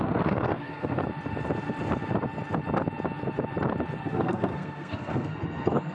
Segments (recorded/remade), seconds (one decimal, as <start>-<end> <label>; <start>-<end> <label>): 0.0-1.0 remade; 1.0-4.0 recorded; 4.0-5.9 remade